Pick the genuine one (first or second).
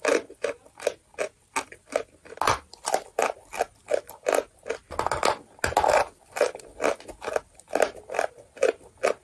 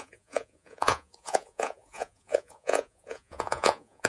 first